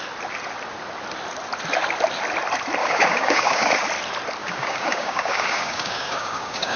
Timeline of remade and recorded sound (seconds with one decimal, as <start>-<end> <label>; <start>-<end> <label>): 0.0-2.8 recorded; 2.8-3.7 remade; 3.7-4.4 recorded; 4.4-6.8 remade